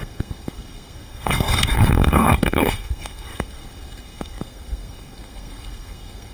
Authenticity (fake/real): fake